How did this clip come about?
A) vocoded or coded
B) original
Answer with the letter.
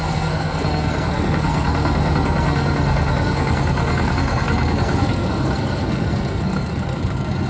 A